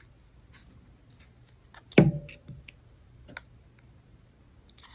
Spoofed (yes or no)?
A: no